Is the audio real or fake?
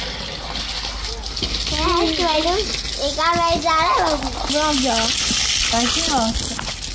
real